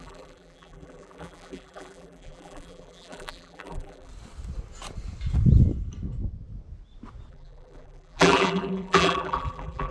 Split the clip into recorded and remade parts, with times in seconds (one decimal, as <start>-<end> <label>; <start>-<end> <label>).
0.0-4.1 remade; 4.1-7.3 recorded; 7.3-9.9 remade